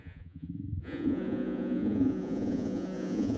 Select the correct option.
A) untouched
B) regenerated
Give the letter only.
B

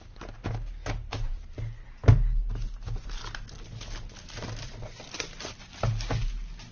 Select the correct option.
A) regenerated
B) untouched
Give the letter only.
B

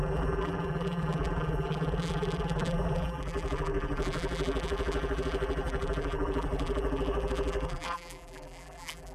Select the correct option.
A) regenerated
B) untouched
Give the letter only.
A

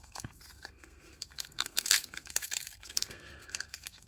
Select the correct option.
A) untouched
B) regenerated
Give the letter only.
B